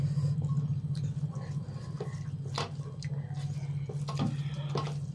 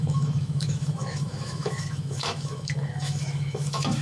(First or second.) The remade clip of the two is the second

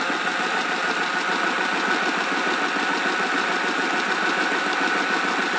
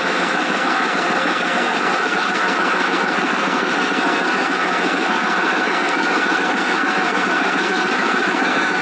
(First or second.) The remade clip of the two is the second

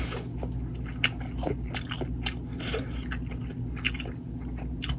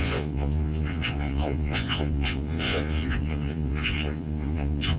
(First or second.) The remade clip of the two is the second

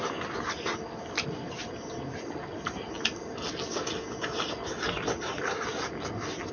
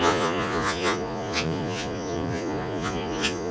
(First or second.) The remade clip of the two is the second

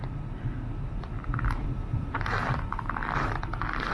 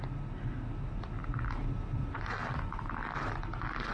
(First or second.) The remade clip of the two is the first